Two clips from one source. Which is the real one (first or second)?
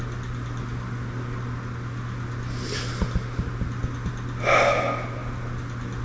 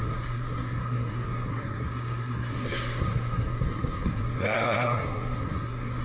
first